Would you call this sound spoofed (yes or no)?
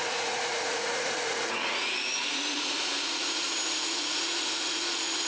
yes